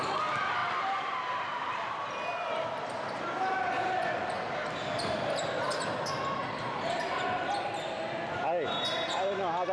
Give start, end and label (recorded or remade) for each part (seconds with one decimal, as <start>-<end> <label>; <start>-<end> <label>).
0.0-0.6 recorded; 0.6-1.9 remade; 1.9-6.4 recorded; 6.4-7.5 remade; 7.5-9.7 recorded